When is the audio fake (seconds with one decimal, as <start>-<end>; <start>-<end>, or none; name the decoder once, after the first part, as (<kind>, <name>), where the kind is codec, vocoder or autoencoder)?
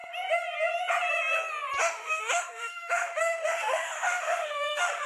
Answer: 1.8-5.1 (autoencoder, DAC-VAE)